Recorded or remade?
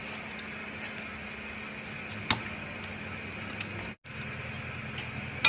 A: recorded